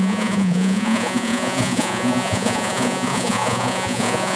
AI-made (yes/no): yes